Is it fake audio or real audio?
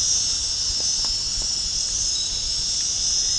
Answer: real